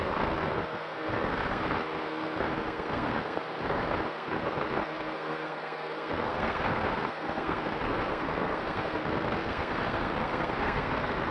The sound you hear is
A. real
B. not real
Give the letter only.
B